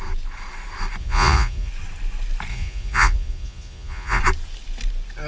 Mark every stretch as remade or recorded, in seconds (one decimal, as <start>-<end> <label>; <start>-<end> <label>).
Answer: 0.0-1.0 recorded; 1.0-1.7 remade; 1.7-2.5 recorded; 2.5-4.2 remade; 4.2-5.3 recorded